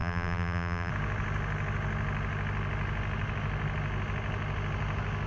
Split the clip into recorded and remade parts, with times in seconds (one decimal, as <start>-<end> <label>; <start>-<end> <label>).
0.0-0.9 remade; 0.9-5.3 recorded